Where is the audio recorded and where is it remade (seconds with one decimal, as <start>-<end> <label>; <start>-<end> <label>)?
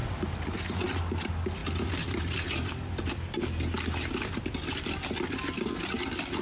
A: 0.0-0.6 remade; 0.6-1.6 recorded; 1.6-4.7 remade; 4.7-6.4 recorded